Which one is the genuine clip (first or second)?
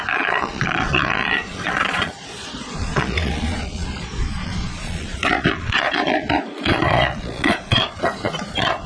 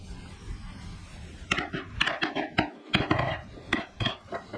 second